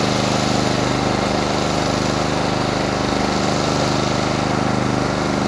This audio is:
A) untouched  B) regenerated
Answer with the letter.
A